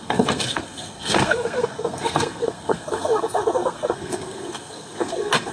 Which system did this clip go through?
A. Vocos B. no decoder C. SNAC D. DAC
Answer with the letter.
C